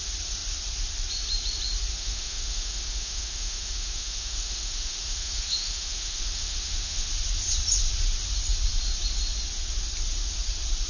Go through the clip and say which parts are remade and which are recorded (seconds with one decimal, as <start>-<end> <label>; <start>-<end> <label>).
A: 0.0-1.9 recorded; 1.9-7.1 remade; 7.1-10.9 recorded